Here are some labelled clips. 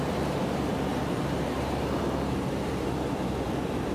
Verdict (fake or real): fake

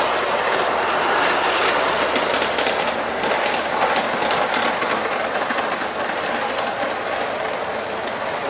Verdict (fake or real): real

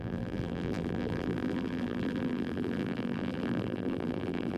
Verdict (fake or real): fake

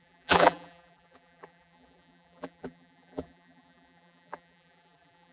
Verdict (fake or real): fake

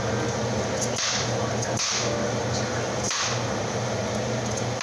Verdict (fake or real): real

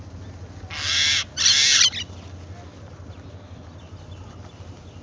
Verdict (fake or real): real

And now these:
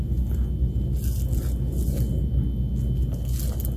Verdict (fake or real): real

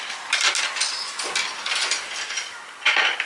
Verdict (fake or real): real